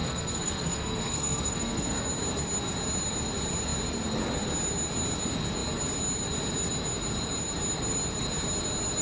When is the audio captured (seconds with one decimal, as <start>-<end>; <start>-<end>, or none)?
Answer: 2.0-9.0